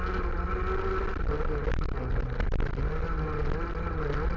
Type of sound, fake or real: real